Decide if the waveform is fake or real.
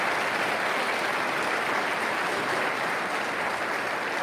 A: real